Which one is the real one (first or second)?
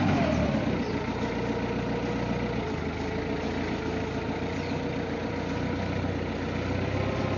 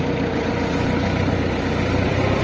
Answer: first